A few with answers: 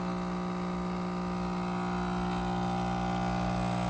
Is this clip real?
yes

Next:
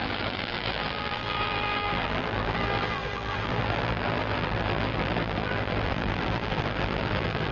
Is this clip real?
no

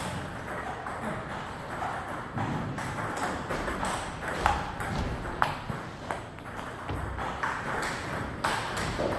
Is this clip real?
yes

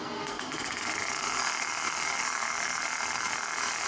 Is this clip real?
no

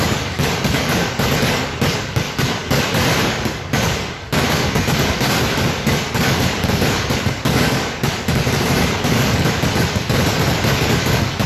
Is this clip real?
no